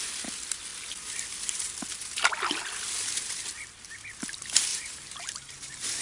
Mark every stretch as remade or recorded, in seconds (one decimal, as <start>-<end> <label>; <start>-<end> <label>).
0.0-4.7 recorded; 4.7-5.5 remade; 5.5-6.0 recorded